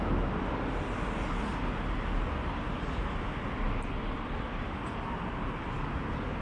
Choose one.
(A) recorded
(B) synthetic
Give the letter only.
A